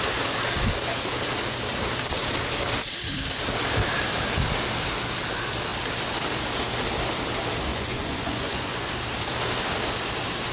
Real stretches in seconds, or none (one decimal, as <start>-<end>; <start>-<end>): 0.0-7.7; 8.9-10.5